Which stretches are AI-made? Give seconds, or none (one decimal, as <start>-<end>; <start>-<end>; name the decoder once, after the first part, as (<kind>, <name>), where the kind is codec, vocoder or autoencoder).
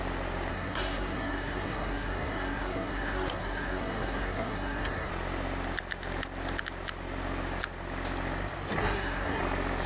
0.5-5.1 (codec, SNAC); 8.8-9.4